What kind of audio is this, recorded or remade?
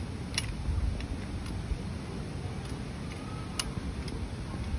recorded